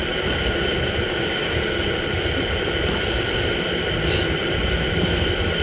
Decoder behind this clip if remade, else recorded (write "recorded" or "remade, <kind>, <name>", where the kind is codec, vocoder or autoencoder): recorded